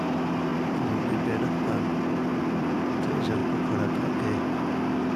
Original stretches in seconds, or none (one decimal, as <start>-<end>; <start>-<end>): 0.0-0.5; 1.0-2.3; 2.9-5.2